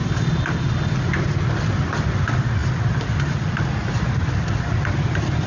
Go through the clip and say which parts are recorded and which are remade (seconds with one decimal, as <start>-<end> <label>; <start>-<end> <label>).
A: 0.0-5.5 recorded